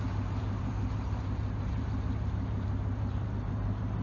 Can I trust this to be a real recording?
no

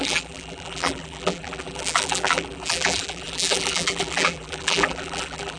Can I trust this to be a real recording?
no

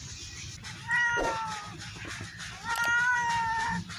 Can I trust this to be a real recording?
yes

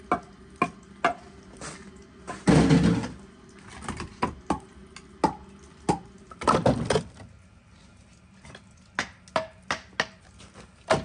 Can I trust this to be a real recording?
yes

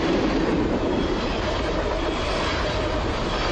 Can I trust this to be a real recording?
yes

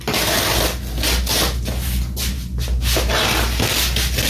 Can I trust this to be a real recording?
yes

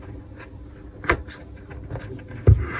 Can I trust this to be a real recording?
no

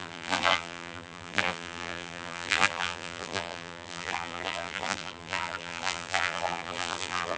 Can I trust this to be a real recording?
no